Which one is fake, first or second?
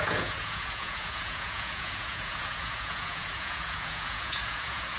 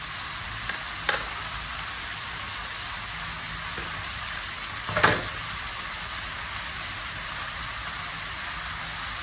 first